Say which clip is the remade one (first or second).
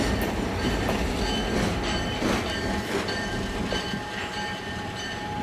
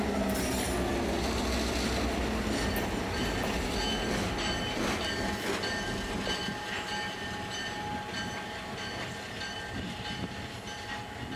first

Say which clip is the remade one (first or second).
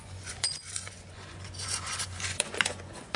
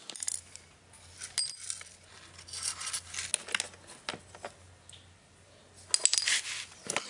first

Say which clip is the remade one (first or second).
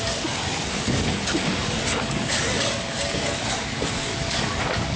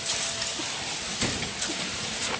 first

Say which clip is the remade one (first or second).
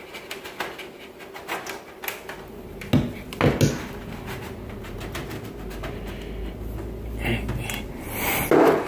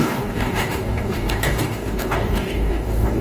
second